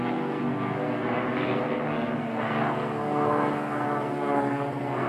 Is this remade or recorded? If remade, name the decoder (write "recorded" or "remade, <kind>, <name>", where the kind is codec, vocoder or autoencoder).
remade, codec, SNAC